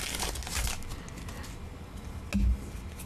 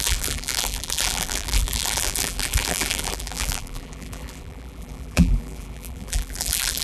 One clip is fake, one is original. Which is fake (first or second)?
second